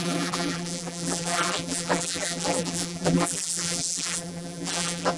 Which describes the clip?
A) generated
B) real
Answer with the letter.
A